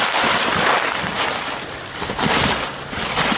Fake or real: fake